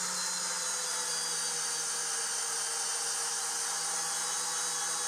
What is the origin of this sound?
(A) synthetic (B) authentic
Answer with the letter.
B